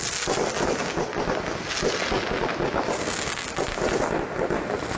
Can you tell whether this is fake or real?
real